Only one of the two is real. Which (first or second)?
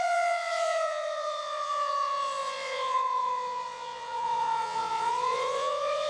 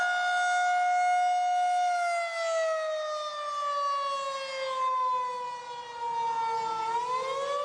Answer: second